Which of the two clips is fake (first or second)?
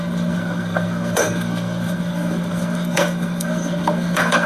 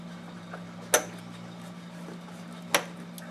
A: first